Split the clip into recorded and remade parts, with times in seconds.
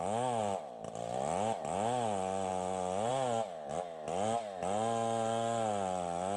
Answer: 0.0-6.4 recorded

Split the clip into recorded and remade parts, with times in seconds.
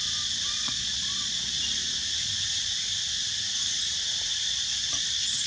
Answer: 0.0-0.6 recorded; 0.6-1.6 remade; 1.6-4.5 recorded; 4.5-5.5 remade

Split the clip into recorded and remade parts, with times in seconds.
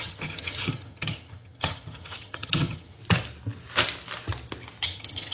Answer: 0.0-3.0 remade; 3.0-4.8 recorded; 4.8-5.3 remade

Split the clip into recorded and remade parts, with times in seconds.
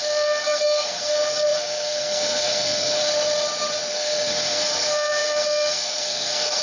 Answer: 0.0-3.0 remade; 3.0-3.9 recorded; 3.9-6.6 remade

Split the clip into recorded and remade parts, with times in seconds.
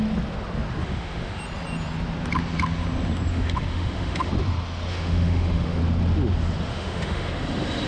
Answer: 0.0-0.8 recorded; 0.8-1.4 remade; 1.4-3.3 recorded; 3.3-4.3 remade; 4.3-4.9 recorded; 4.9-5.8 remade; 5.8-6.7 recorded; 6.7-7.3 remade; 7.3-7.9 recorded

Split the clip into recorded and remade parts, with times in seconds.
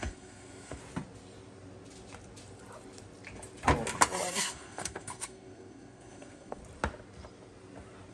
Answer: 0.0-0.8 remade; 0.8-4.3 recorded; 4.3-6.6 remade; 6.6-8.1 recorded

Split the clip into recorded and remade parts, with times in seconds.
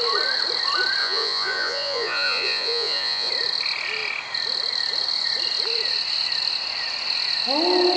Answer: 0.0-1.0 recorded; 1.0-3.3 remade; 3.3-8.0 recorded